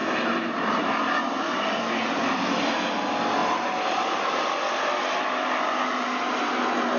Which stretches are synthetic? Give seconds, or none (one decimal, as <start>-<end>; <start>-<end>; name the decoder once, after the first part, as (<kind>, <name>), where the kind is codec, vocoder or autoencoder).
0.0-1.8 (vocoder, BigVGAN v2); 3.4-4.5